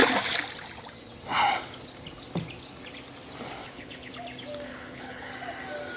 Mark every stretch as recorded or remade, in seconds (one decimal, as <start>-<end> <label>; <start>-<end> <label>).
0.0-3.6 recorded; 3.6-4.1 remade; 4.1-4.7 recorded; 4.7-5.3 remade; 5.3-6.0 recorded